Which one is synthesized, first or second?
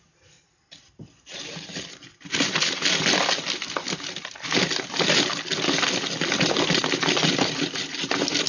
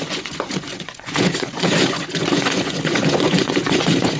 second